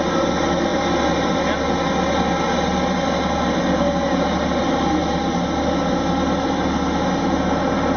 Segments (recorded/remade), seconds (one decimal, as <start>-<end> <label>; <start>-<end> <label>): 0.0-8.0 recorded